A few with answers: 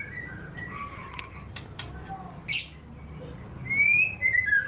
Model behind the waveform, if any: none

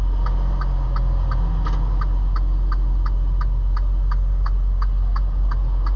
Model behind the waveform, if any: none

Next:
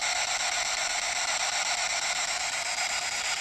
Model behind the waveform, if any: none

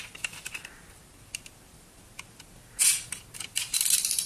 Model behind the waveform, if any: none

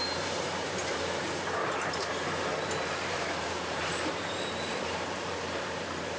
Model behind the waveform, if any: vocoder, BigVGAN v2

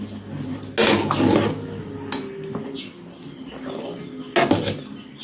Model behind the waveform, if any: none